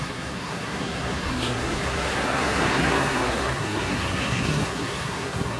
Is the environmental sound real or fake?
fake